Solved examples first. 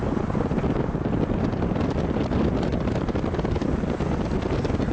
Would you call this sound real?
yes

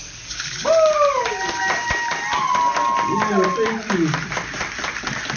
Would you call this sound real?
yes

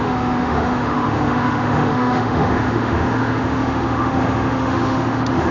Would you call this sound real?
no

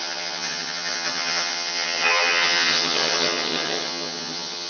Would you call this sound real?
no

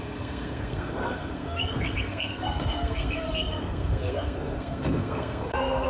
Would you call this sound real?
no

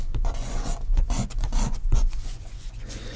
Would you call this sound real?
no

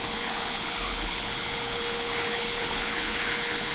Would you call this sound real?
no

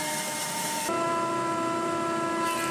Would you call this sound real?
no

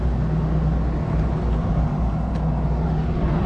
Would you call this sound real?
yes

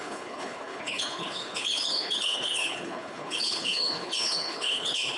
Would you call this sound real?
no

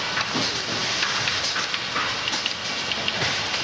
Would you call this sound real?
yes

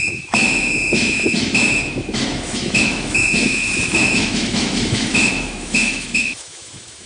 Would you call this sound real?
no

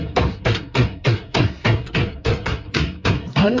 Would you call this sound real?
no